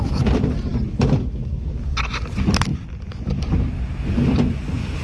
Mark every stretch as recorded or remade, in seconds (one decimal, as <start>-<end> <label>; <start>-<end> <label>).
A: 0.0-5.0 remade

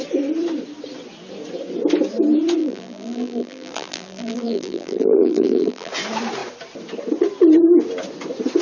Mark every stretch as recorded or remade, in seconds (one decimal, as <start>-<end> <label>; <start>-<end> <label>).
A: 0.0-2.6 recorded; 2.6-5.9 remade; 5.9-8.6 recorded

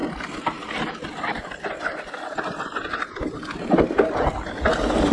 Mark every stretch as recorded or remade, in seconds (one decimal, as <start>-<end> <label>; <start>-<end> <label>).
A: 0.0-5.1 recorded

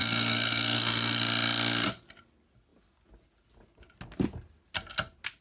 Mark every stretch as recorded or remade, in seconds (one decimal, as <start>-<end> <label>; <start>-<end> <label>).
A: 0.0-1.2 remade; 1.2-5.4 recorded

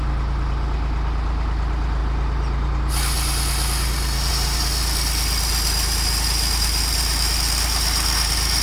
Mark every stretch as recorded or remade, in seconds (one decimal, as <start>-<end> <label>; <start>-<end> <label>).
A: 0.0-8.6 recorded

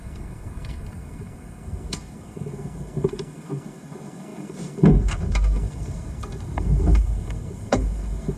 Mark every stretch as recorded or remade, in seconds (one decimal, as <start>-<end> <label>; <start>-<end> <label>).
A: 0.0-8.4 remade